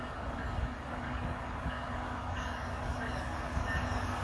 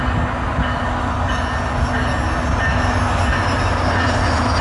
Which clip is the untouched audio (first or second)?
second